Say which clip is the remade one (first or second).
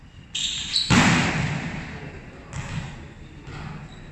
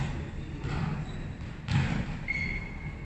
second